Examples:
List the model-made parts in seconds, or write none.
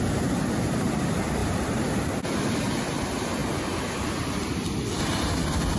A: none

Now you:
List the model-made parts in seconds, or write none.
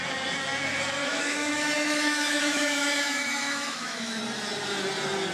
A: 1.0-4.2 (autoencoder, DAC-VAE)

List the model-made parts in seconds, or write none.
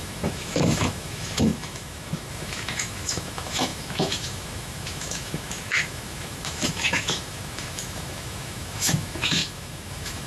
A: 0.0-10.3 (autoencoder, DAC-VAE)